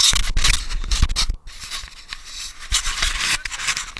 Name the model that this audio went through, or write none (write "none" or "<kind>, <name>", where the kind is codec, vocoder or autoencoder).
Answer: none